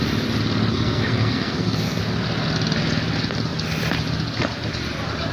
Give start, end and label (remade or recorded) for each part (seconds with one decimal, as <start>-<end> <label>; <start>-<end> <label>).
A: 0.0-0.7 recorded; 0.7-2.0 remade; 2.0-5.3 recorded